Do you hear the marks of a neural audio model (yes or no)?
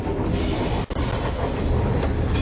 no